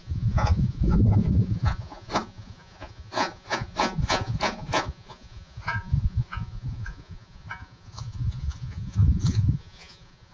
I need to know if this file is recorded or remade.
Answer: remade